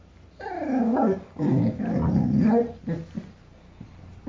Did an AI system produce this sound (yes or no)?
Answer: yes